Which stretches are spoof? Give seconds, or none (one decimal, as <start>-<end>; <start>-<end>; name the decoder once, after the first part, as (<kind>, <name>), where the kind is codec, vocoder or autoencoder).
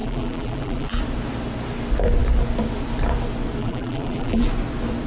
0.0-1.0 (vocoder, BigVGAN v2); 3.6-4.5